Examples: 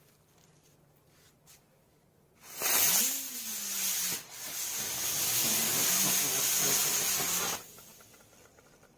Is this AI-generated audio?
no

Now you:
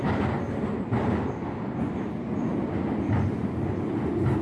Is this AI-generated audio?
no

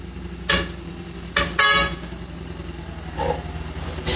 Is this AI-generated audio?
no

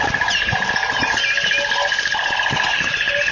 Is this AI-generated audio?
no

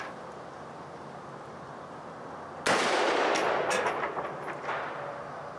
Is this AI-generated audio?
no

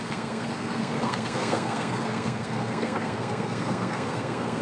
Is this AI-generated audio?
yes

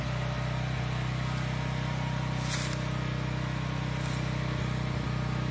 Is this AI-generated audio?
no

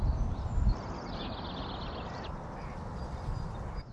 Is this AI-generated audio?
no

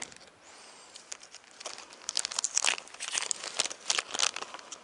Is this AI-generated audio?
no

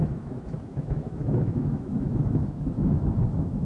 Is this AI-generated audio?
yes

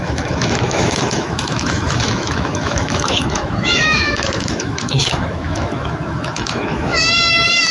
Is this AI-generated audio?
yes